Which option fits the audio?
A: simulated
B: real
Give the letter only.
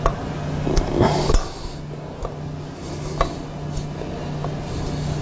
B